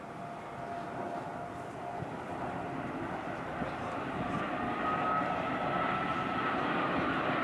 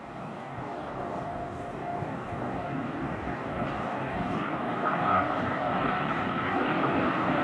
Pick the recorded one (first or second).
first